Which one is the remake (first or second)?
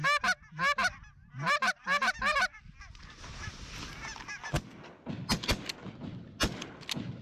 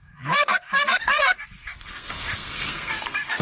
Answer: second